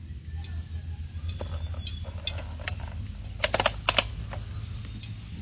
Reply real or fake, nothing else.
real